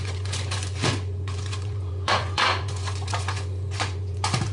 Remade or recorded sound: remade